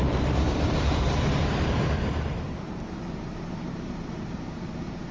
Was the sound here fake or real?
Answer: fake